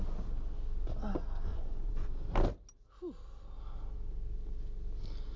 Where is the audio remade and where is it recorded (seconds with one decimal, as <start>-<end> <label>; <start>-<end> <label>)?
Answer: 0.0-1.5 recorded; 1.5-2.1 remade; 2.1-5.4 recorded